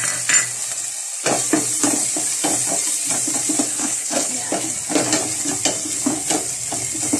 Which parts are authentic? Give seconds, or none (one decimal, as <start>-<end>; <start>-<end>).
0.0-3.7; 4.3-7.2